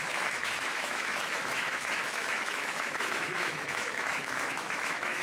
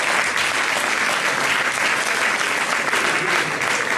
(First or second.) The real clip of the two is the second